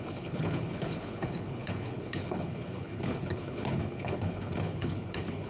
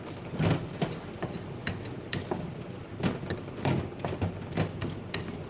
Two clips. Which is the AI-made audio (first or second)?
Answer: first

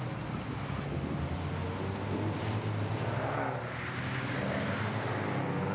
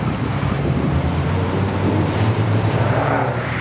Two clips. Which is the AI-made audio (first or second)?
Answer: second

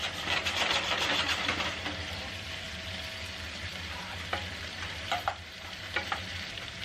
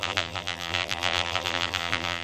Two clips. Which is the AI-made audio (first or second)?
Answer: second